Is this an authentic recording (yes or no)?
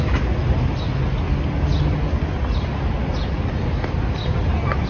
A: yes